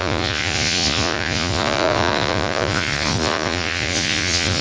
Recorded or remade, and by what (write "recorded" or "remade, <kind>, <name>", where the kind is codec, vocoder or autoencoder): remade, vocoder, Vocos